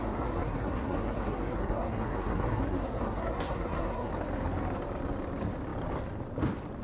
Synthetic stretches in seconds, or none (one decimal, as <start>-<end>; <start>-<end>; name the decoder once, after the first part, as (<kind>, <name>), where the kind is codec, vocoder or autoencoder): 0.0-4.1 (codec, SNAC)